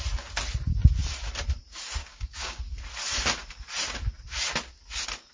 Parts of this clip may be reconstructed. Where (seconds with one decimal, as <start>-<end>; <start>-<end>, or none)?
2.0-2.6